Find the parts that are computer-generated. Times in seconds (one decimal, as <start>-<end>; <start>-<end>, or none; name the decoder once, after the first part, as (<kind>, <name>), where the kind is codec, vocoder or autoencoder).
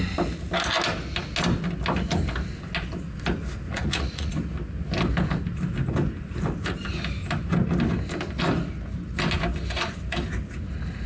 3.7-4.3 (vocoder, Vocos)